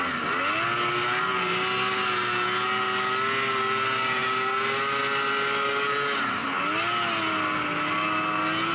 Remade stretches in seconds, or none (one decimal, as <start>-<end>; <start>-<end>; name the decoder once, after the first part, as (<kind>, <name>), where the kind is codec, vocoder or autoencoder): none